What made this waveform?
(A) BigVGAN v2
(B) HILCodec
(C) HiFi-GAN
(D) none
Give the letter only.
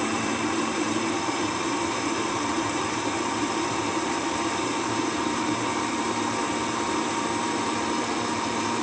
A